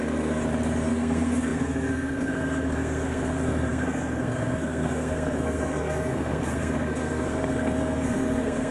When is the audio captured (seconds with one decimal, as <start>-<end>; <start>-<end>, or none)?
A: 0.4-0.9